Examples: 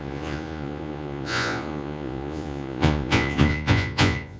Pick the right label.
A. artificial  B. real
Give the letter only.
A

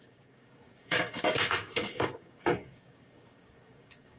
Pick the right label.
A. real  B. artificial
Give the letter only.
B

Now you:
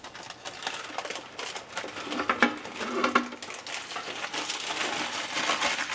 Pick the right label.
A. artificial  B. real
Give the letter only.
B